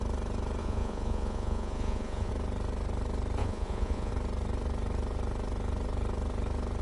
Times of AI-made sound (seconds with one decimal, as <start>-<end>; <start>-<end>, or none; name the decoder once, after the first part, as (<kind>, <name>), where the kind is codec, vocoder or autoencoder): 0.6-2.3 (vocoder, Vocos); 3.4-4.1

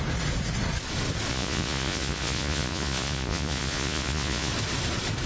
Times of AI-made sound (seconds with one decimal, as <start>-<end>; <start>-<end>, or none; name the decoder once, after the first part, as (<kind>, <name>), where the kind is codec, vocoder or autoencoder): 1.3-4.5 (vocoder, Vocos)

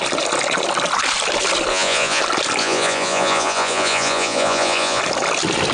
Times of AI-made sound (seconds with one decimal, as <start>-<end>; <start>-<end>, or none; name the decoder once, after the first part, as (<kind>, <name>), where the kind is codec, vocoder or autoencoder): 1.7-2.2 (vocoder, Vocos); 2.6-5.0

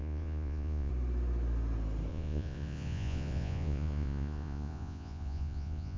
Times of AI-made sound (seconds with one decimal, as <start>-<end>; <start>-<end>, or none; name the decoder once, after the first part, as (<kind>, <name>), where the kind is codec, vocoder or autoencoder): 0.0-0.9 (vocoder, Vocos); 2.1-6.0

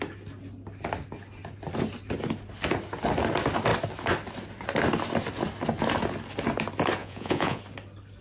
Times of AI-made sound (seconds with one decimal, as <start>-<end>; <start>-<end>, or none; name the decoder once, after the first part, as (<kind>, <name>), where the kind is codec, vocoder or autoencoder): 7.0-7.6 (vocoder, Vocos)

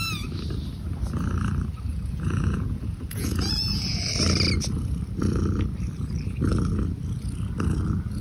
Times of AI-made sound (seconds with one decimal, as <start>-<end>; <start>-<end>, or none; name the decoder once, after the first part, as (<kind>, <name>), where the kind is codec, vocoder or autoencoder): 1.9-4.1 (vocoder, Vocos)